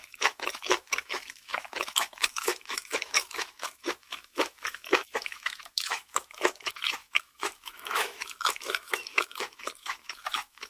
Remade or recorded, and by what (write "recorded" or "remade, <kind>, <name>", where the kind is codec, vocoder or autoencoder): remade, autoencoder, DAC-VAE